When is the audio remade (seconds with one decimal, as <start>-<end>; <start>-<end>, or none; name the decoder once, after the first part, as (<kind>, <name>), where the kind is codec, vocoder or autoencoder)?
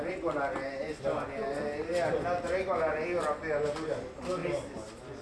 none